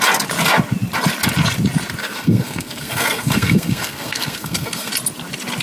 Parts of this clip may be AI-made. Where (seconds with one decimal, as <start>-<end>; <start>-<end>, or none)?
2.0-4.9